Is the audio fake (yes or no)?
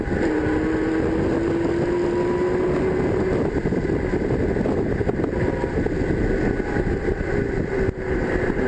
no